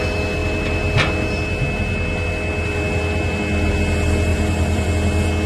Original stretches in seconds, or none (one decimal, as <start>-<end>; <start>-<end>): 0.0-4.3; 4.9-5.5